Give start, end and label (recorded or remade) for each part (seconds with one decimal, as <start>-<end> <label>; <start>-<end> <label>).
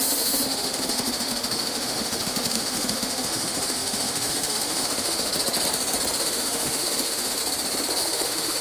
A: 0.0-5.3 remade; 5.3-6.2 recorded; 6.2-7.4 remade; 7.4-8.0 recorded; 8.0-8.6 remade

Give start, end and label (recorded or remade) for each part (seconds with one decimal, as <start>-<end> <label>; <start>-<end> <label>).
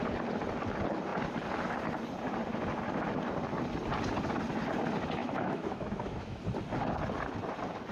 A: 0.0-5.2 recorded; 5.2-6.4 remade; 6.4-7.9 recorded